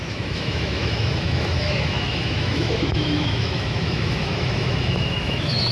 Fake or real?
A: fake